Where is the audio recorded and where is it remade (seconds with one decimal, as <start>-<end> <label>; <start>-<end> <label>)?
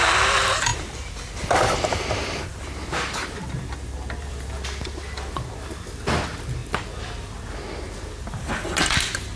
0.0-0.7 recorded; 0.7-1.9 remade; 1.9-2.5 recorded; 2.5-4.3 remade; 4.3-6.6 recorded; 6.6-8.1 remade; 8.1-9.4 recorded